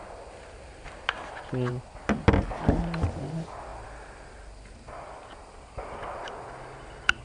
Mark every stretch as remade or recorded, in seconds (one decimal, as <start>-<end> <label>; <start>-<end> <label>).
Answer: 0.0-0.7 recorded; 0.7-1.7 remade; 1.7-7.2 recorded